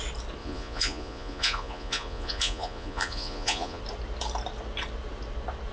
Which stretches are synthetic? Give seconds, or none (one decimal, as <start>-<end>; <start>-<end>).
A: 0.4-3.8